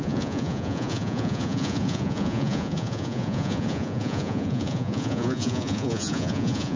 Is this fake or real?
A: fake